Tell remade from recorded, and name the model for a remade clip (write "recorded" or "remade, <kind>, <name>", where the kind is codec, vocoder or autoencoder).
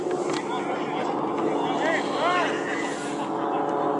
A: recorded